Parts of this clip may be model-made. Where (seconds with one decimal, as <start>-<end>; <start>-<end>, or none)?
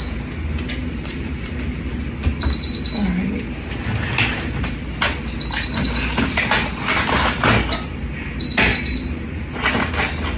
0.8-2.0; 8.7-9.9